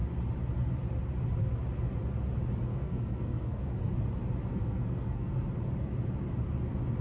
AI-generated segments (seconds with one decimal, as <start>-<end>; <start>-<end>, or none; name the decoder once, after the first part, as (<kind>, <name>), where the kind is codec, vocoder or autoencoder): 2.7-3.8 (codec, SNAC); 4.5-5.3